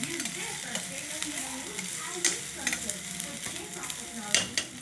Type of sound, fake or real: real